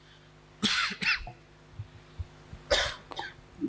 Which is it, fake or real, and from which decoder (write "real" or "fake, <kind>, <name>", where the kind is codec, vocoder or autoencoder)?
real